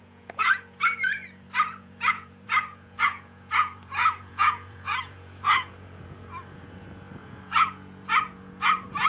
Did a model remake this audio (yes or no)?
yes